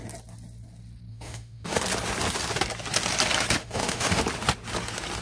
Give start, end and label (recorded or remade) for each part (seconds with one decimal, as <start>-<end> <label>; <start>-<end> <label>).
0.0-1.1 recorded; 1.1-1.8 remade; 1.8-3.6 recorded; 3.6-4.2 remade; 4.2-5.2 recorded